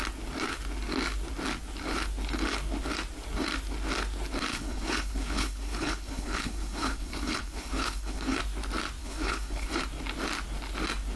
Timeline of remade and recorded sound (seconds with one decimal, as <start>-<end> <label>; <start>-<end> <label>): 0.0-4.5 recorded; 4.5-8.4 remade; 8.4-9.0 recorded; 9.0-9.8 remade; 9.8-11.2 recorded